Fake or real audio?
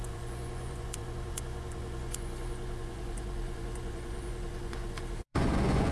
fake